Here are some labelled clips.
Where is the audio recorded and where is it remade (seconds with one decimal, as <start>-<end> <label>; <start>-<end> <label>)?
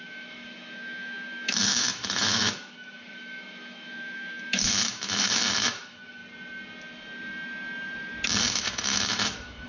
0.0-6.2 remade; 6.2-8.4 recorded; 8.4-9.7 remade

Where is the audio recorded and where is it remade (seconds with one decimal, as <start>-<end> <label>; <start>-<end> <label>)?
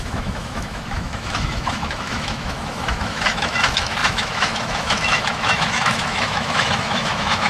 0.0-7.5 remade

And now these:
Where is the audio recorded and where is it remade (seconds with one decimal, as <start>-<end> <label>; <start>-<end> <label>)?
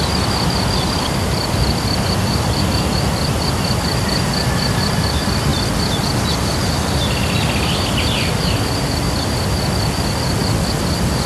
0.0-11.3 recorded